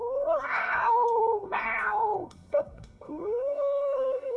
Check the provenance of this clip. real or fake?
fake